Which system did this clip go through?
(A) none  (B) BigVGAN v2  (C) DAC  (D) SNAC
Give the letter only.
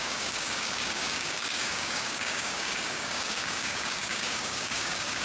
C